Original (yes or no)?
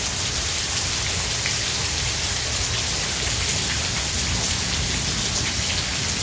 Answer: yes